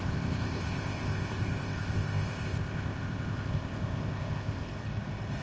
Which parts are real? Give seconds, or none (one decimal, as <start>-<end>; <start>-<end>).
4.7-5.4

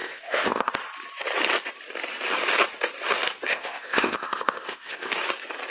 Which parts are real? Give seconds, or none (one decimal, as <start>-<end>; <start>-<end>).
0.7-3.5; 5.1-5.7